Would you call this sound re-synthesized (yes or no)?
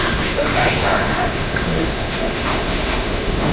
yes